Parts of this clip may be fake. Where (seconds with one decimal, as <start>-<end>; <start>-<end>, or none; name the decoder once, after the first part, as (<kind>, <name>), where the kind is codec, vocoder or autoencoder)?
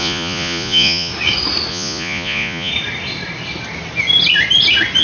0.0-1.1 (vocoder, Vocos); 1.7-2.7